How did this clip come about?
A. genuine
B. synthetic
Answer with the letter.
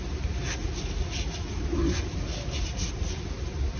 A